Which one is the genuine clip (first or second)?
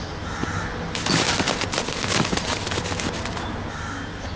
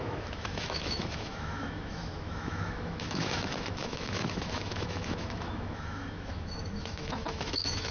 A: first